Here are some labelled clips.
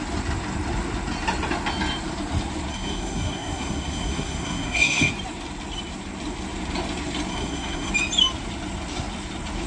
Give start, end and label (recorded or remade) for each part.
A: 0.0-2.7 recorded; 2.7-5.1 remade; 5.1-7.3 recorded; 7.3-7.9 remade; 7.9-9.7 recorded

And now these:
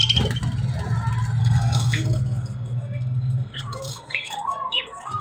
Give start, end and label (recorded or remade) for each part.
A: 0.0-1.4 recorded; 1.4-5.2 remade

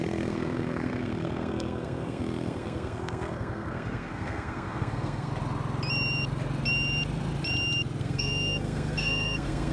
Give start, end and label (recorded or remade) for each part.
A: 0.0-5.3 remade; 5.3-8.0 recorded; 8.0-9.7 remade

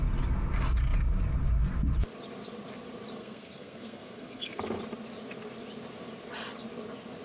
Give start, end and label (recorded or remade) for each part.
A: 0.0-3.2 recorded; 3.2-4.6 remade; 4.6-7.2 recorded

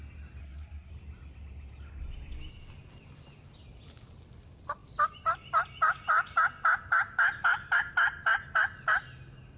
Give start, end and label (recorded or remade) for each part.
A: 0.0-0.4 recorded; 0.4-0.9 remade; 0.9-9.6 recorded

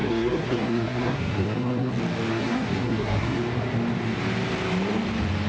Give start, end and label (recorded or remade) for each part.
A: 0.0-1.9 remade; 1.9-2.3 recorded; 2.3-3.4 remade; 3.4-5.5 recorded

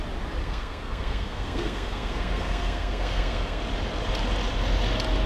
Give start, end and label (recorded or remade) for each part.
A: 0.0-0.4 recorded; 0.4-3.6 remade; 3.6-5.3 recorded